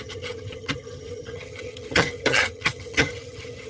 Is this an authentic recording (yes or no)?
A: no